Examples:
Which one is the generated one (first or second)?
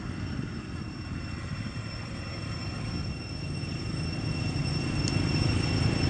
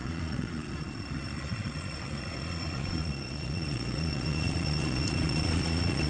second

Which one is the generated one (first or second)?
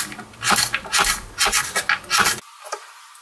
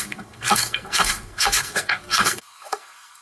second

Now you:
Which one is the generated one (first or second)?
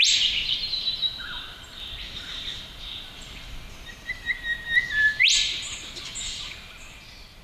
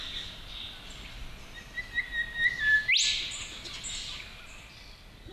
first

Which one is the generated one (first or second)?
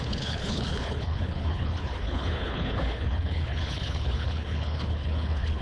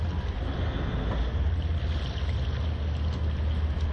first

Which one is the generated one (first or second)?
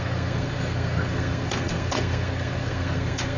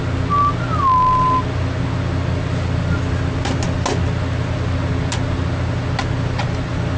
first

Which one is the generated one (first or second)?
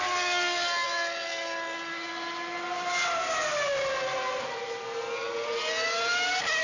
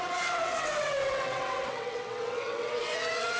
second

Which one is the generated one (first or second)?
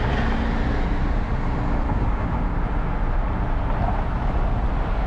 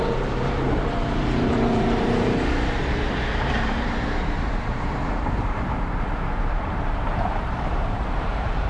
second